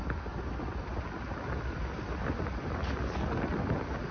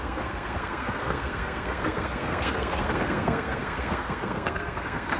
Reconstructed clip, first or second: second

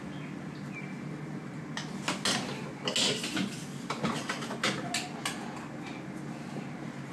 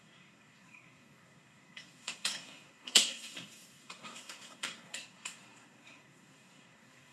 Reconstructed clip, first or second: second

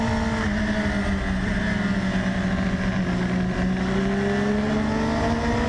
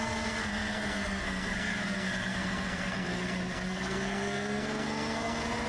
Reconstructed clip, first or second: second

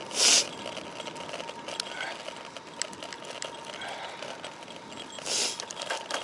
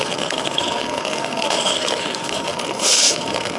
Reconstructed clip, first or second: second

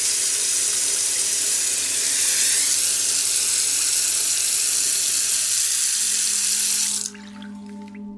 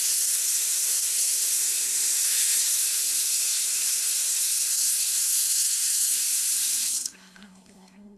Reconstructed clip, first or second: second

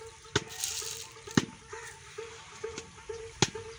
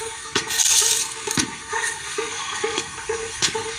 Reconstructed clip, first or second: second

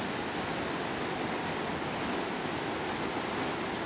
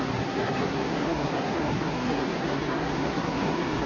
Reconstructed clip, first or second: second